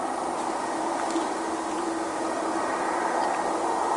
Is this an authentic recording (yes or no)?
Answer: yes